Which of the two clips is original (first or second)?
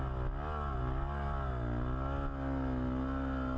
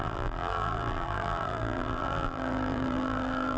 first